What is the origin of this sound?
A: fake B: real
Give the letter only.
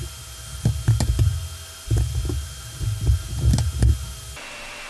B